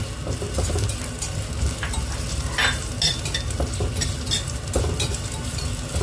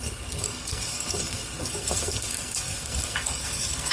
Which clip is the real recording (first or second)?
first